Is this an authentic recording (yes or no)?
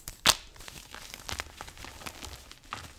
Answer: yes